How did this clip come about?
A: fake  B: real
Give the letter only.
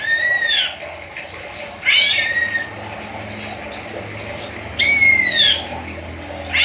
B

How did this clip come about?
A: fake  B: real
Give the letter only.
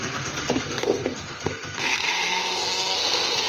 A